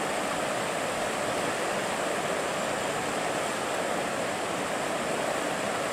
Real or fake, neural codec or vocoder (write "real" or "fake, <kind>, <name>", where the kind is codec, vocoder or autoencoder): real